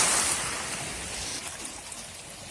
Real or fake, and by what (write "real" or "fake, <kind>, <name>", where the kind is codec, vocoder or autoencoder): real